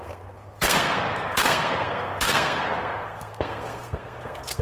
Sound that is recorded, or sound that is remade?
remade